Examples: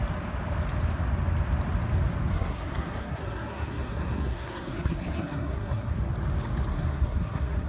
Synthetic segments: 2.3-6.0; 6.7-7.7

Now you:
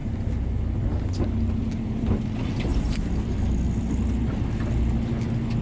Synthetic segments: none

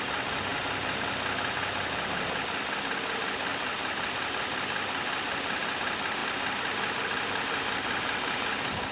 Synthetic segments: 3.5-4.4

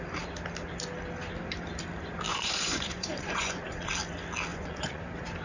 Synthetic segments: 2.3-3.9; 4.5-5.0

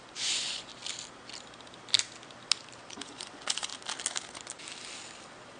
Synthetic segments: 0.0-0.7; 2.8-3.7

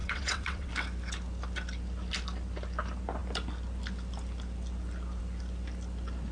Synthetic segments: 0.0-0.7

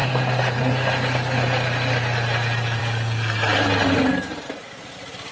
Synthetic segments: none